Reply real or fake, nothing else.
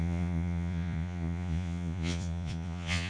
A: fake